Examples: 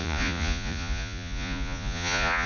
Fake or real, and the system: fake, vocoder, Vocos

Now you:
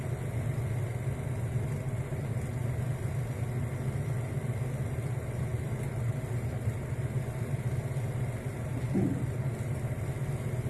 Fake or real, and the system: real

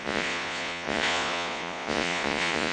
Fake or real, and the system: fake, vocoder, Vocos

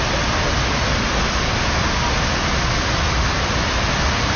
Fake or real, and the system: real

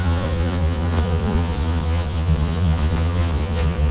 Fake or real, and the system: fake, vocoder, Vocos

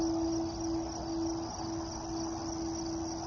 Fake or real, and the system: real